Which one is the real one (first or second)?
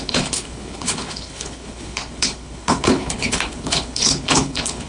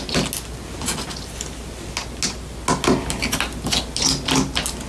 second